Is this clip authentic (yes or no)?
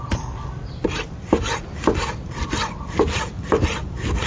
no